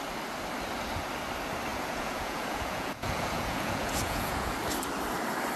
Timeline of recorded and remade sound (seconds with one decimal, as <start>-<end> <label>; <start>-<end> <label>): 0.0-1.7 recorded; 1.7-4.5 remade; 4.5-5.6 recorded